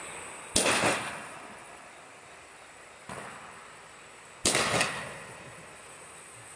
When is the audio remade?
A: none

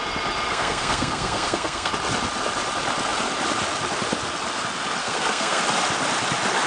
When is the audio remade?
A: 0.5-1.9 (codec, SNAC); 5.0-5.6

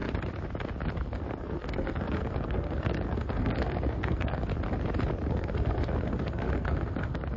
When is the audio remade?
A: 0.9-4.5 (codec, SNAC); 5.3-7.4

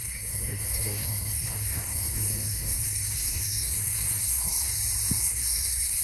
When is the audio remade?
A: 0.0-4.7 (codec, SNAC); 5.2-6.0

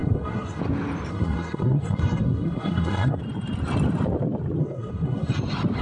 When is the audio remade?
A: 0.0-0.6 (codec, SNAC); 1.1-3.2; 4.6-5.3

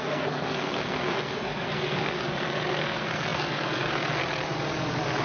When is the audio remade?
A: 0.0-4.2 (codec, SNAC)

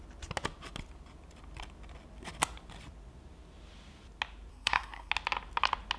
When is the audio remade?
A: 4.5-5.1 (codec, SNAC)